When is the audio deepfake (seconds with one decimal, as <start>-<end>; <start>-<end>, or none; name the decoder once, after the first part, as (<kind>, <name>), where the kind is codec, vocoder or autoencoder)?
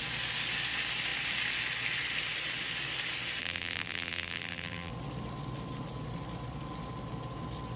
3.4-4.9 (vocoder, BigVGAN v2)